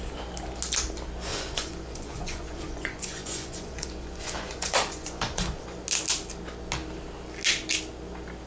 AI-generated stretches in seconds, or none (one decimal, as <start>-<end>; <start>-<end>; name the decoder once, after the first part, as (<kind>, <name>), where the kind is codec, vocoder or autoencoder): 1.3-5.6 (vocoder, Vocos)